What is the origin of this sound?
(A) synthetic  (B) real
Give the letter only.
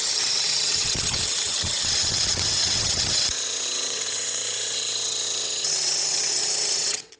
A